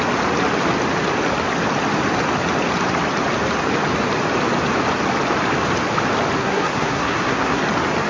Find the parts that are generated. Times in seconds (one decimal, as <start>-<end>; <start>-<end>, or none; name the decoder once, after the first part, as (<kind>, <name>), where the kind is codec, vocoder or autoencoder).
6.4-7.6 (codec, SNAC)